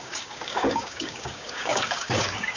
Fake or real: fake